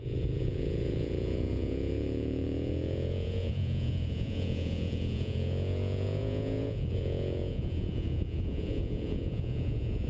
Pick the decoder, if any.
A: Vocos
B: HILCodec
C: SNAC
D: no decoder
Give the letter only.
A